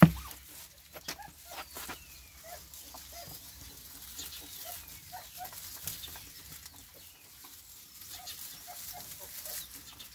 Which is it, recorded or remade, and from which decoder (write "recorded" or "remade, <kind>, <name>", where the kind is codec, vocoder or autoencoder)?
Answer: recorded